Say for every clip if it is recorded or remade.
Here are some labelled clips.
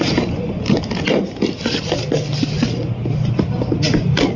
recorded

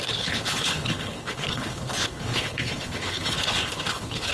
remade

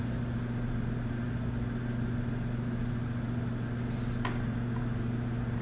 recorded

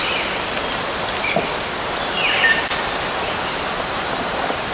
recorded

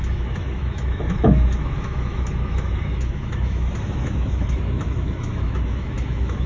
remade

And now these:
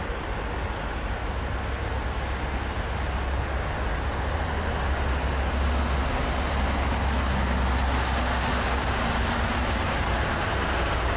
recorded